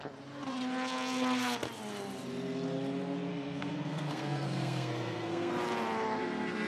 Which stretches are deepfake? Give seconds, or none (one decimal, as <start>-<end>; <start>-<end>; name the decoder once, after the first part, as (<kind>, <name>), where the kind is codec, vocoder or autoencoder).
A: 3.3-5.5 (codec, SNAC)